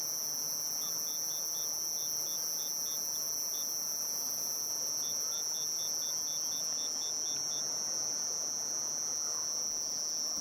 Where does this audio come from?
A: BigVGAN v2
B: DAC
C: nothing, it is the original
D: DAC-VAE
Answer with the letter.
C